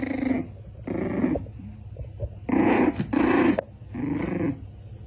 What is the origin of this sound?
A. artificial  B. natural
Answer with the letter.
B